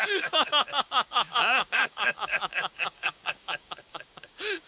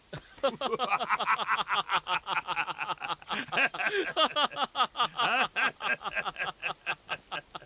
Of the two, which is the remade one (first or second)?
first